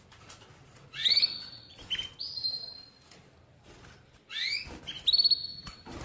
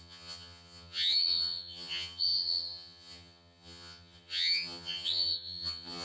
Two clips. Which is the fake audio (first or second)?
second